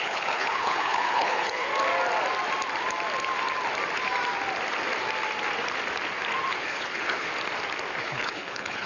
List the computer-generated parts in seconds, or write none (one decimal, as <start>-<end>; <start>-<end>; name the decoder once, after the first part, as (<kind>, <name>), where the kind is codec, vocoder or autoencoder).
0.0-1.7 (codec, HILCodec); 6.5-7.3; 8.0-8.9